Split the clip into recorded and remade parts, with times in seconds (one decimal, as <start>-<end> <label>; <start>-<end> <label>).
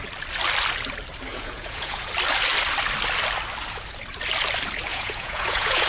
0.0-1.3 recorded; 1.3-2.1 remade; 2.1-4.9 recorded; 4.9-5.9 remade